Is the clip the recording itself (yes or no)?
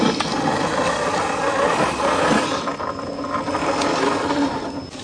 yes